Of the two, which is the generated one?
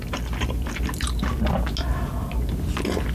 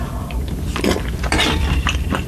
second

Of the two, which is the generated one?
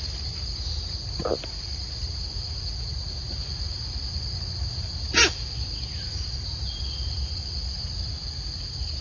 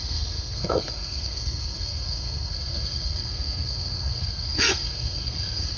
second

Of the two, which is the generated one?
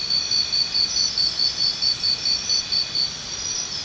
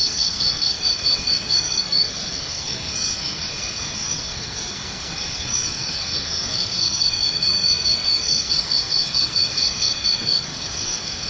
second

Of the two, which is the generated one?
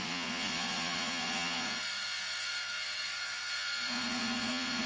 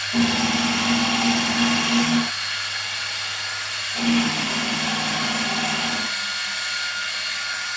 first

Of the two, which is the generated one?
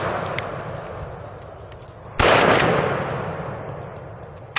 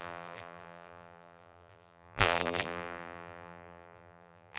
second